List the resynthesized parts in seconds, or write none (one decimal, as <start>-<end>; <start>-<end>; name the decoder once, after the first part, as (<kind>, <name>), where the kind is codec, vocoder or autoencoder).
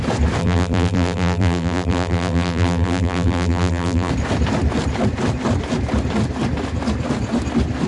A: 0.4-4.1 (vocoder, BigVGAN v2)